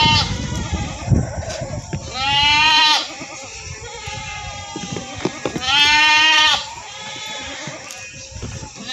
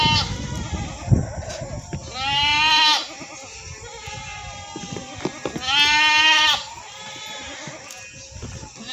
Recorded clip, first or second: second